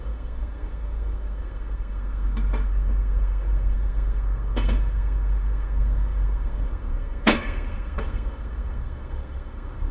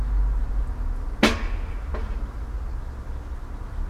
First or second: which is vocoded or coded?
first